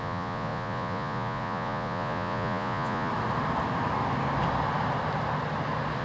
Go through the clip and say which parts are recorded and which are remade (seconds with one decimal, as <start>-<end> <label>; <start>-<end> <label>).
0.0-3.1 remade; 3.1-6.0 recorded